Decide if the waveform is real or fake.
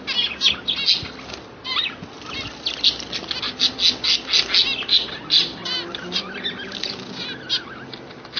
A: real